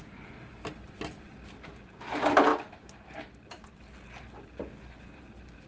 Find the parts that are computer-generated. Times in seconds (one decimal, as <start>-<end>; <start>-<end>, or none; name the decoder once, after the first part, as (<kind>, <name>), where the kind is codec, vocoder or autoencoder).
none